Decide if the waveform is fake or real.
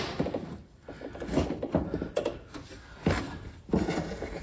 real